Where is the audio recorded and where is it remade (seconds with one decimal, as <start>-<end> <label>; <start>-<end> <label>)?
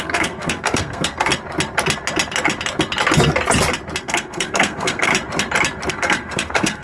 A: 0.0-1.3 remade; 1.3-4.0 recorded; 4.0-5.1 remade; 5.1-5.9 recorded; 5.9-6.8 remade